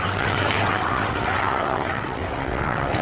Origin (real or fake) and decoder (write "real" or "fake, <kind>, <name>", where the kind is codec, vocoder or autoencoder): fake, vocoder, WaveNeXt